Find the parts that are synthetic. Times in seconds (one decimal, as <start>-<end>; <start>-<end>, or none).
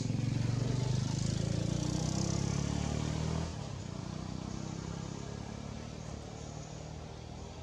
none